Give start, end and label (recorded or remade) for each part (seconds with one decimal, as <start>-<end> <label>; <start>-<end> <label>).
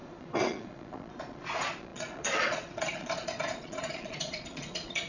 0.0-5.1 remade